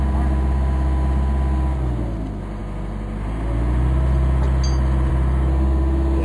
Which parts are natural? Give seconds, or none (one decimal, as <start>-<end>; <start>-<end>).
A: 0.0-6.2